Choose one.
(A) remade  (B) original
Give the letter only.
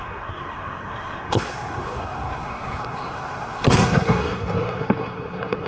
A